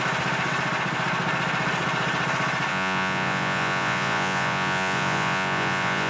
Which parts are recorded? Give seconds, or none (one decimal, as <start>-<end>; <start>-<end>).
0.0-2.7